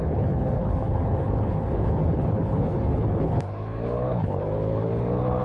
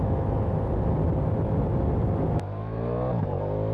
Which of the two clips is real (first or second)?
second